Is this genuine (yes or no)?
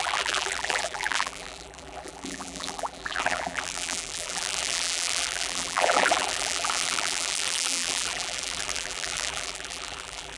no